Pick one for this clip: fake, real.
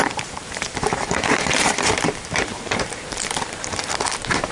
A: fake